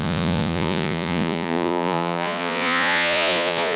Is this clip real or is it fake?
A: fake